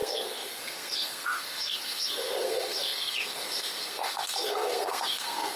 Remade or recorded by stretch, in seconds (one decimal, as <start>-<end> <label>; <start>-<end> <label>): 0.0-5.6 remade